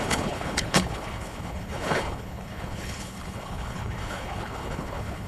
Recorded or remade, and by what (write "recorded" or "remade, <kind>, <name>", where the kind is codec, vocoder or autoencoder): remade, codec, HILCodec